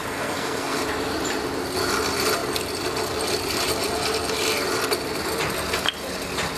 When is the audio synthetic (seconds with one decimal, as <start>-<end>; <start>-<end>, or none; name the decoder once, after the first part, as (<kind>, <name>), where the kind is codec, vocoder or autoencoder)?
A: 0.0-0.8 (codec, SNAC)